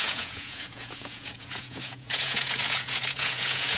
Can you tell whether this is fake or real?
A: fake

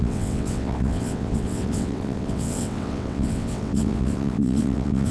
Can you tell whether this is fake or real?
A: fake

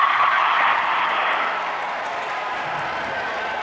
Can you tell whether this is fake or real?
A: real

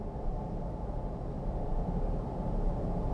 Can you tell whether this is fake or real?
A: fake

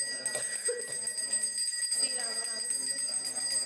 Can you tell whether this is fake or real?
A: real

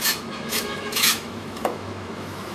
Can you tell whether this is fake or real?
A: fake